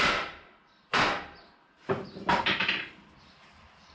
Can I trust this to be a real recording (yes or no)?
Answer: no